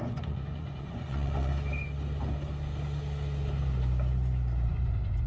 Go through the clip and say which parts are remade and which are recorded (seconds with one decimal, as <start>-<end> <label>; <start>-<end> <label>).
0.0-1.5 remade; 1.5-4.7 recorded; 4.7-5.3 remade